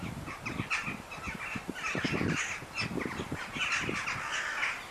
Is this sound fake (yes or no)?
no